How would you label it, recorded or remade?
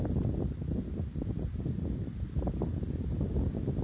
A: recorded